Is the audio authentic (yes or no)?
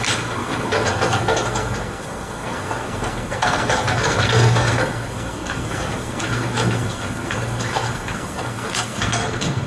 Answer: no